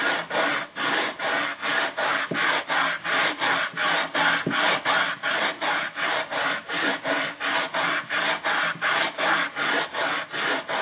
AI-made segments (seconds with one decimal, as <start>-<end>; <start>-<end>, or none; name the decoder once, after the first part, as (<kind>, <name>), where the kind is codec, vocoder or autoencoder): none